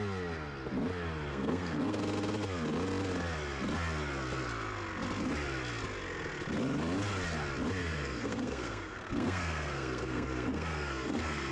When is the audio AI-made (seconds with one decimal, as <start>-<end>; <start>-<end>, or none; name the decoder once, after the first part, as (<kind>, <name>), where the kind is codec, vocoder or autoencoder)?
1.3-2.0 (codec, SNAC); 7.8-11.5